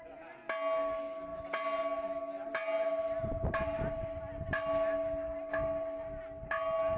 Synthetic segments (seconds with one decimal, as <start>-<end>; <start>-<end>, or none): none